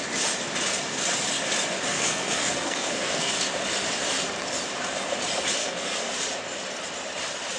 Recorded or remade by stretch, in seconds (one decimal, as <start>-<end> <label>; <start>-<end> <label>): 0.0-1.9 recorded; 1.9-3.3 remade; 3.3-5.6 recorded; 5.6-6.1 remade; 6.1-7.6 recorded